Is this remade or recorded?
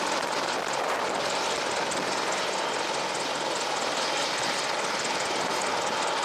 recorded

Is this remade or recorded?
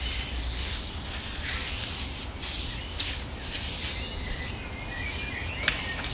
recorded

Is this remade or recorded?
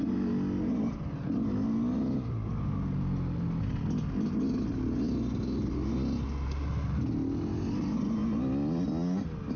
recorded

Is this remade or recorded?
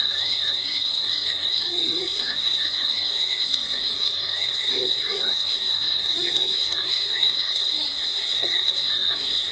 remade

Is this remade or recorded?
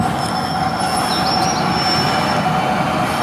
recorded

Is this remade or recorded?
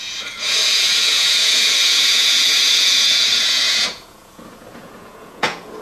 remade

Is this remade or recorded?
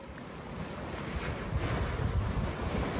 recorded